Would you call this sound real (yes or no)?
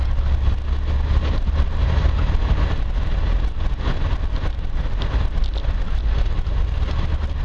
yes